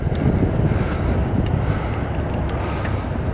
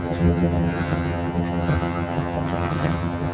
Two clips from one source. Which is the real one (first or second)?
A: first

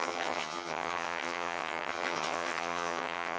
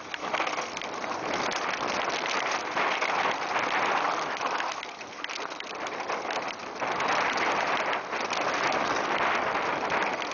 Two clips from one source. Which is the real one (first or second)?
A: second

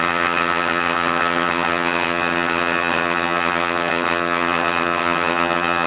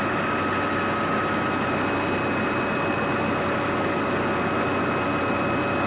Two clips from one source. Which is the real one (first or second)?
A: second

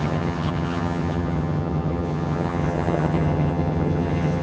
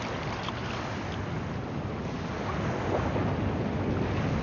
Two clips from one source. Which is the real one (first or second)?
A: second